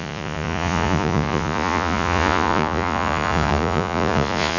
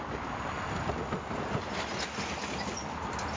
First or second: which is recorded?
second